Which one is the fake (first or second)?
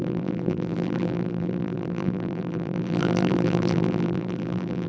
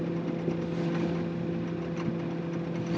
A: first